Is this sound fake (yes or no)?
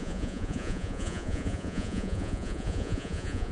yes